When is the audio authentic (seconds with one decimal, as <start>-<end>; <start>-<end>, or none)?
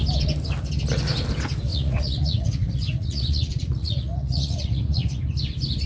0.0-1.7; 5.2-5.9